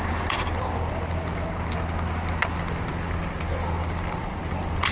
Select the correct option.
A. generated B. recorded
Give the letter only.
B